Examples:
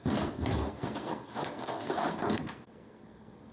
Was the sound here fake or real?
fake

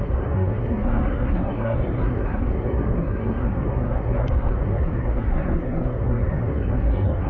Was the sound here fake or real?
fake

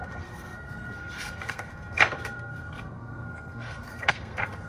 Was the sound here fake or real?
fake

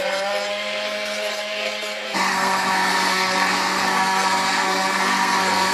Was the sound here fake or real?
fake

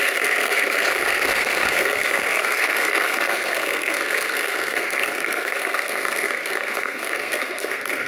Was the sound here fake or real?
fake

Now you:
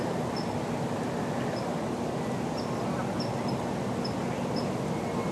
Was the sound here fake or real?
real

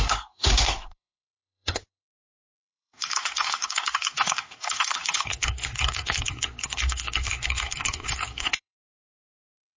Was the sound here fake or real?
fake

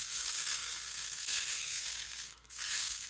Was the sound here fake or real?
fake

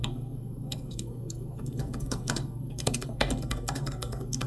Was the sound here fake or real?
fake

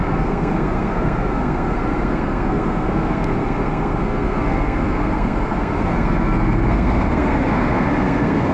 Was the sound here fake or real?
fake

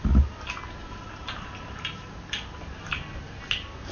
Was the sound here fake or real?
real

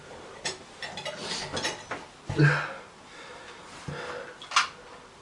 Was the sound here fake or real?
real